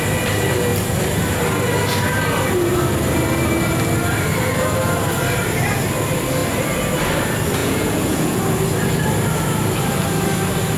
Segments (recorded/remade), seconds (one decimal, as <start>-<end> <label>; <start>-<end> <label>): 0.0-7.6 recorded; 7.6-8.4 remade; 8.4-10.8 recorded